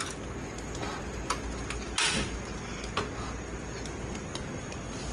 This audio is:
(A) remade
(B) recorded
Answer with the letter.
B